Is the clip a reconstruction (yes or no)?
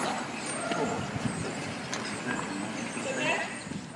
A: no